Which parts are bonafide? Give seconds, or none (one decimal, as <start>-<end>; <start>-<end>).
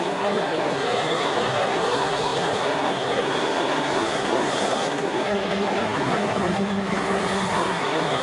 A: none